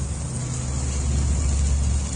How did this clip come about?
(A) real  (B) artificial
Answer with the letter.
A